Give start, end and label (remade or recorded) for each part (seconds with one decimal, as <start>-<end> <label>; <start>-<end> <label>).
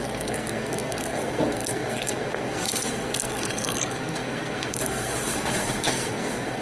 0.0-6.6 remade